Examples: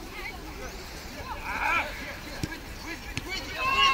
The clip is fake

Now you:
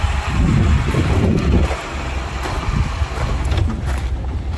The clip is real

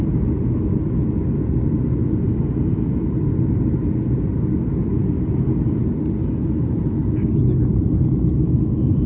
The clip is real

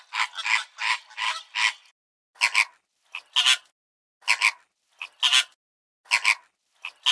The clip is real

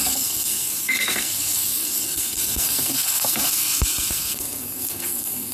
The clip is fake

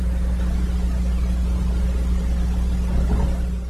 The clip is real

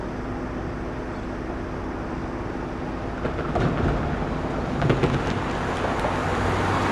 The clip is real